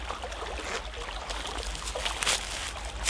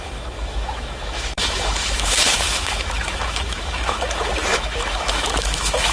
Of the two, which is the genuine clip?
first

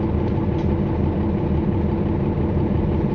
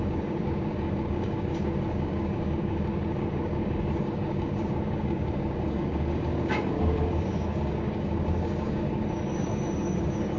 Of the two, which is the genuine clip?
first